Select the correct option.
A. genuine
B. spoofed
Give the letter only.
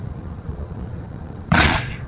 B